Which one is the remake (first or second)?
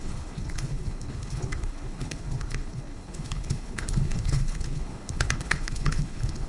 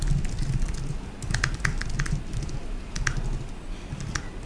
first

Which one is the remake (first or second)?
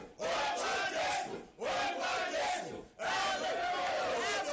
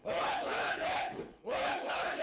second